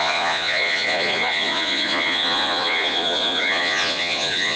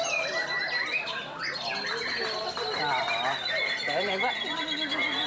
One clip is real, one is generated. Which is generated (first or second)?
first